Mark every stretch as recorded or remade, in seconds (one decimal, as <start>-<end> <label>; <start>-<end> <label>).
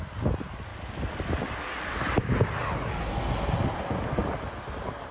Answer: 0.0-4.2 recorded; 4.2-5.1 remade